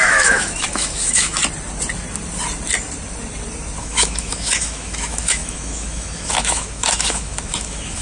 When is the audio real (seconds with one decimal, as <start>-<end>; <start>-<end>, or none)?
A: 1.4-3.8